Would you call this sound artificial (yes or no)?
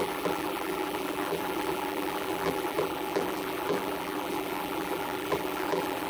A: yes